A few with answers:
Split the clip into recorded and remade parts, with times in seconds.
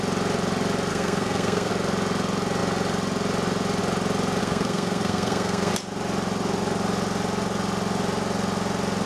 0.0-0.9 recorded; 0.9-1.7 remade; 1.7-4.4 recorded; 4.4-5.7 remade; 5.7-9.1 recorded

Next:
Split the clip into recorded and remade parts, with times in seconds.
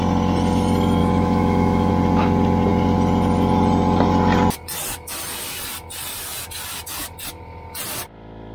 0.0-1.0 recorded; 1.0-1.9 remade; 1.9-8.5 recorded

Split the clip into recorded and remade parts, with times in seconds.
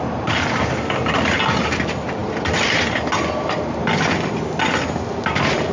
0.0-5.7 recorded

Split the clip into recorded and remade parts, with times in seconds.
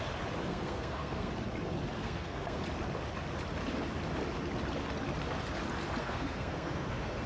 0.0-0.5 recorded; 0.5-1.3 remade; 1.3-2.0 recorded; 2.0-2.6 remade; 2.6-6.0 recorded; 6.0-7.3 remade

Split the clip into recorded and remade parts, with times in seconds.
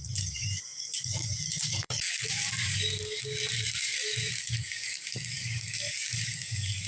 0.0-6.9 remade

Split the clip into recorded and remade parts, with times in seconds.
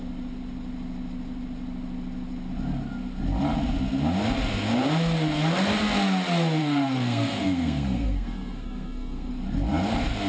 0.0-6.6 recorded; 6.6-9.3 remade; 9.3-10.3 recorded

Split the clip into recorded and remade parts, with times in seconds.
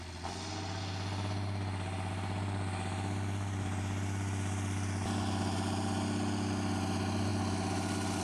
0.0-8.2 recorded